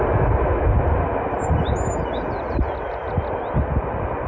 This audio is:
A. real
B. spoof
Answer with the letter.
A